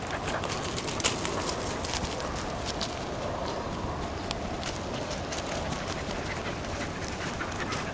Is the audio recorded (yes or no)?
yes